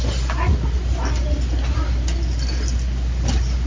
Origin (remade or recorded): recorded